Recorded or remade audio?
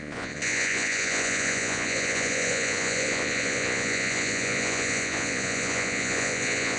remade